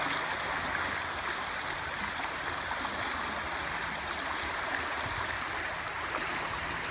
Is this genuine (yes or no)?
yes